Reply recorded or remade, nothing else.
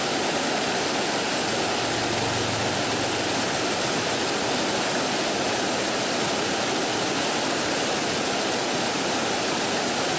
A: recorded